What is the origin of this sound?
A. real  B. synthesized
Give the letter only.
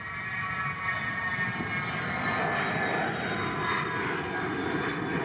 A